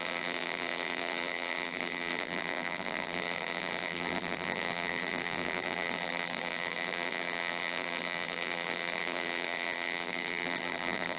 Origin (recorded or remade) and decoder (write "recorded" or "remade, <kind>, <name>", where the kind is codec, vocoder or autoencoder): remade, vocoder, BigVGAN v2